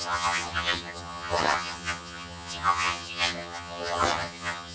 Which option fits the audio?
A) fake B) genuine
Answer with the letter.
A